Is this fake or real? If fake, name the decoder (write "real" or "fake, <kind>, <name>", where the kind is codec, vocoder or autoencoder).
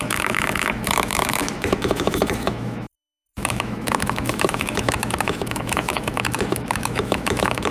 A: fake, autoencoder, DAC-VAE